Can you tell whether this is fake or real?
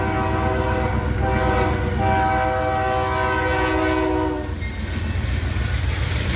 real